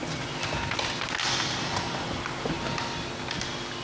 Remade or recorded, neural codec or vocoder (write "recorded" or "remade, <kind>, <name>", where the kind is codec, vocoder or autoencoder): recorded